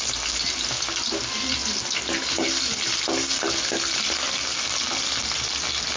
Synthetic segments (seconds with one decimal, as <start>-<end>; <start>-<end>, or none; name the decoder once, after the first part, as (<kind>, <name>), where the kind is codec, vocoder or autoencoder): none